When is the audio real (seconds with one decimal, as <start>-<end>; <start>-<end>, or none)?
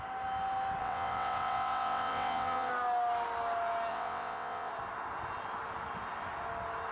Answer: 0.0-0.8; 2.7-3.9; 4.7-6.9